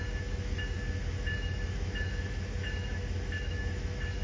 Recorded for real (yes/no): no